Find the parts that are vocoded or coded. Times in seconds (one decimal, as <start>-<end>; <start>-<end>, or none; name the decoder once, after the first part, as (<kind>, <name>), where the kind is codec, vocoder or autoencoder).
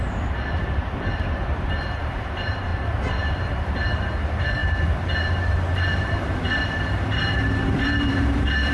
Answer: 0.0-8.7 (vocoder, BigVGAN v2)